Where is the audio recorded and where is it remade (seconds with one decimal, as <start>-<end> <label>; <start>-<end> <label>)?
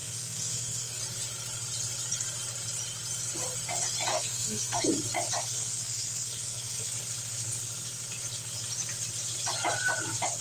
0.0-1.0 remade; 1.0-4.1 recorded; 4.1-4.9 remade; 4.9-5.4 recorded; 5.4-6.9 remade; 6.9-10.4 recorded